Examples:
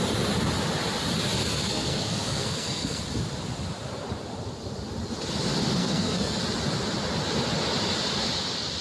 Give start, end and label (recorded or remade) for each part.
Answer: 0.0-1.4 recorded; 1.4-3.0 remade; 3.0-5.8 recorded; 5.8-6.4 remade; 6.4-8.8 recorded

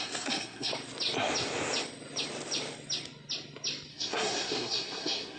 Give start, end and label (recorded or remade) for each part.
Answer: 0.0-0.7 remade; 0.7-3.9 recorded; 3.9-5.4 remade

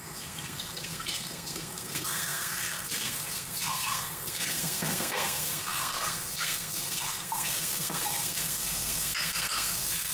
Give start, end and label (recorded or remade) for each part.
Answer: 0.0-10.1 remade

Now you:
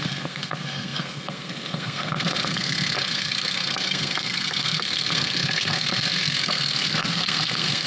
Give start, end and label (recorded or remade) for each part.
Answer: 0.0-7.9 remade

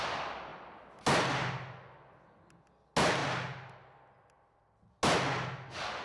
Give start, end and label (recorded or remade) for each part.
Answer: 0.0-6.0 recorded